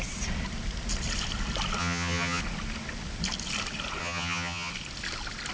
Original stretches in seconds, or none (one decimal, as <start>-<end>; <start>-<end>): 0.0-1.8; 2.4-4.0; 4.7-5.5